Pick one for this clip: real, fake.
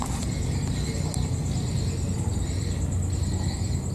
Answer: real